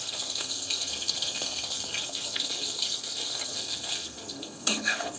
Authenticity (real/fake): fake